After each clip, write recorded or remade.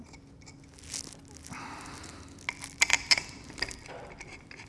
recorded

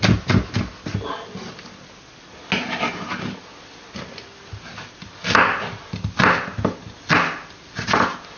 recorded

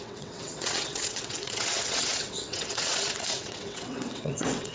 remade